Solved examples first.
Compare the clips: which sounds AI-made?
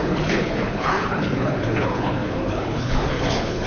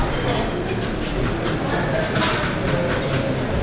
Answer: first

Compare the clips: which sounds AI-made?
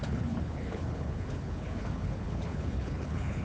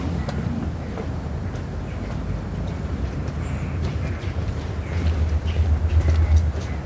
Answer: first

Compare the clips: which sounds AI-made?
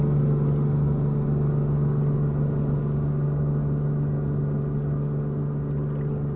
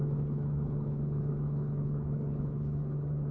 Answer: second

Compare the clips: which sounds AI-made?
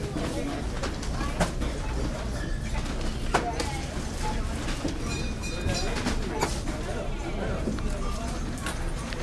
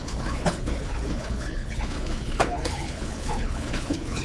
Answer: second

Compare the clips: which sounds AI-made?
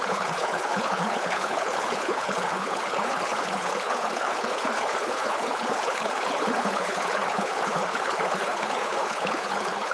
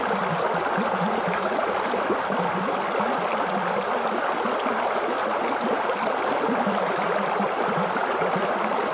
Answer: first